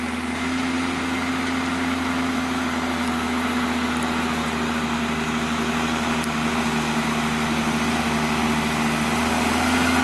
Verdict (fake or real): real